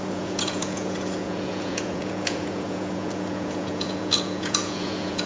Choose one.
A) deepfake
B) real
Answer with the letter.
A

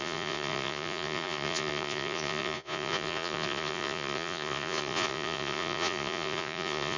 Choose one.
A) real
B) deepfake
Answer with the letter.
B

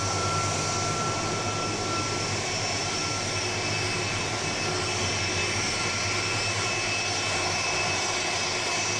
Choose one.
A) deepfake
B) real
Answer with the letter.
B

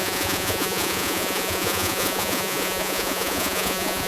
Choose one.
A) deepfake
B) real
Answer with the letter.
A